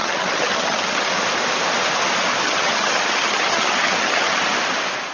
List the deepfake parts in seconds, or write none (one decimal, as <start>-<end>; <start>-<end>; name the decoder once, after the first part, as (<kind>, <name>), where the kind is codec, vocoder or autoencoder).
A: 0.0-1.1 (vocoder, HiFi-GAN); 2.4-4.4